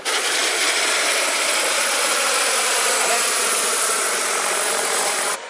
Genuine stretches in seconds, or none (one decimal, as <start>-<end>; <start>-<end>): none